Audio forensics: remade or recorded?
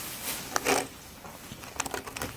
recorded